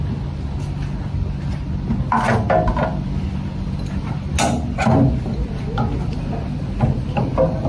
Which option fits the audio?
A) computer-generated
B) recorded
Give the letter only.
B